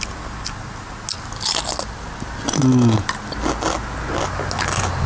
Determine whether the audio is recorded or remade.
recorded